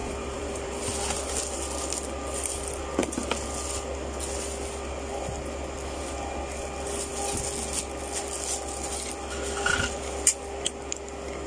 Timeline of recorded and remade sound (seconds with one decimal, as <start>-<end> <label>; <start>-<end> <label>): 0.0-0.8 remade; 0.8-11.5 recorded